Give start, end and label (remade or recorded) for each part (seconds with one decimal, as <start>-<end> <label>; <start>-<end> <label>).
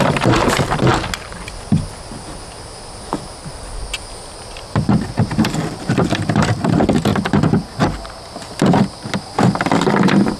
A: 0.0-0.9 remade; 0.9-4.7 recorded; 4.7-7.1 remade; 7.1-9.9 recorded; 9.9-10.4 remade